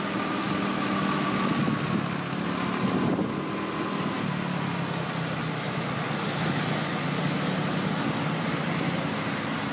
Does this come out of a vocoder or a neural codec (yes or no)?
no